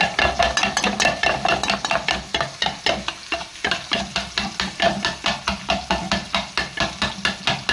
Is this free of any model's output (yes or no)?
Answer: yes